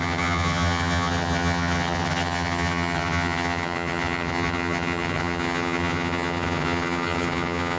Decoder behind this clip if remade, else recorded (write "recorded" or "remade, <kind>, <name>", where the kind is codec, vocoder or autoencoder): remade, vocoder, HiFi-GAN